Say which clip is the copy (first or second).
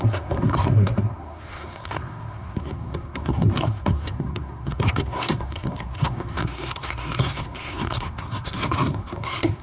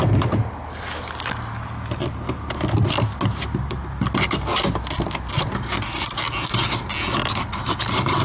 first